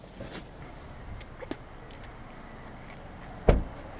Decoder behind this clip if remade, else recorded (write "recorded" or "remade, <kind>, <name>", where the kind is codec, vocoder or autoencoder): recorded